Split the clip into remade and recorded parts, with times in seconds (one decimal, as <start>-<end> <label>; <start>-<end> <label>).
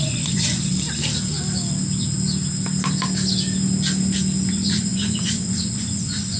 0.0-0.7 remade; 0.7-4.5 recorded; 4.5-6.4 remade